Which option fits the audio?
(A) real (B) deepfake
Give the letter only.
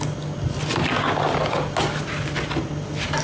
A